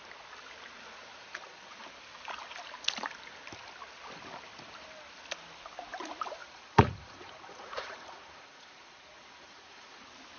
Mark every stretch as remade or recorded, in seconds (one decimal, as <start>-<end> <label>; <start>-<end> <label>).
0.0-1.1 recorded; 1.1-1.8 remade; 1.8-6.4 recorded; 6.4-10.0 remade; 10.0-10.4 recorded